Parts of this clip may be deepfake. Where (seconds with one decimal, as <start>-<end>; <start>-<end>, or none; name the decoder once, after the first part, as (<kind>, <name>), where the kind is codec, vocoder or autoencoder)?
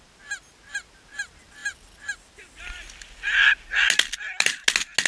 none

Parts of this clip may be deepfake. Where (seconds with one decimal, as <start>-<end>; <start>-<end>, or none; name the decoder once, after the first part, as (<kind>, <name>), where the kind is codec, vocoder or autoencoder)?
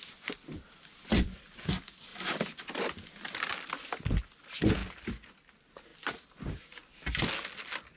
none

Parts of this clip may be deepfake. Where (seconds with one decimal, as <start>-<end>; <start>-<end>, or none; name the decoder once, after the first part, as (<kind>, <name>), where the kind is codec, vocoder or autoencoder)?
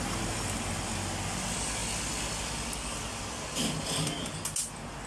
none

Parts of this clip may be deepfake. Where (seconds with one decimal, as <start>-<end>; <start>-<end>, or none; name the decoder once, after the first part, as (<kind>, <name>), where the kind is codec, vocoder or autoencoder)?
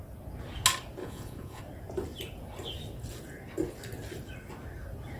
1.0-1.6 (vocoder, Vocos)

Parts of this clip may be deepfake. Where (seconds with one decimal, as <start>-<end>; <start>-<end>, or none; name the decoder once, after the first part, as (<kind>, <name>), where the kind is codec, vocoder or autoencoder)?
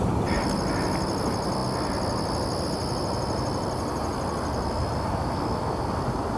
none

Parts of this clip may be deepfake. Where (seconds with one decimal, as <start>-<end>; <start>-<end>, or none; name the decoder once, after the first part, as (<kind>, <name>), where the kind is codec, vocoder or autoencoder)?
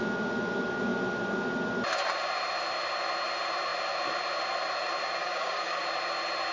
5.2-5.8 (codec, DAC)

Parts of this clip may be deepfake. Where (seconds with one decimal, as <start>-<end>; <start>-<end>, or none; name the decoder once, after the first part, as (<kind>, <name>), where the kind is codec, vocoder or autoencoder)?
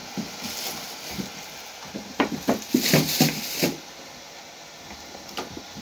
none